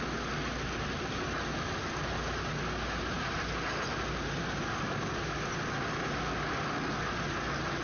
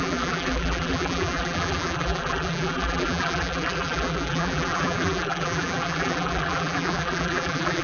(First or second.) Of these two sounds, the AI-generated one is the second